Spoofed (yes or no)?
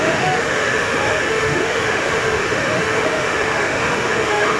yes